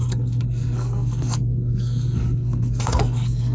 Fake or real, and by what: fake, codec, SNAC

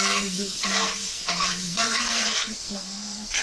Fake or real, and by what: fake, codec, SNAC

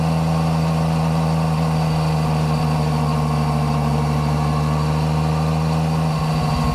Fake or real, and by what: real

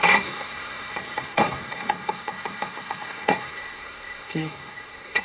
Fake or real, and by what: fake, codec, SNAC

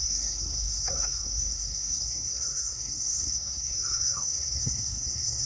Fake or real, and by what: fake, codec, SNAC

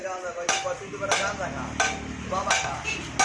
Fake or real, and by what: real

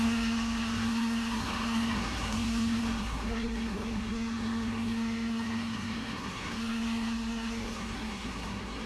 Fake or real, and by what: fake, codec, SNAC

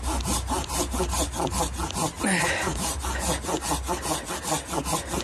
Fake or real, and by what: real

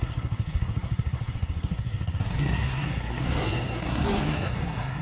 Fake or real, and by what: fake, codec, SNAC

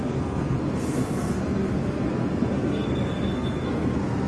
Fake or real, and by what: fake, codec, SNAC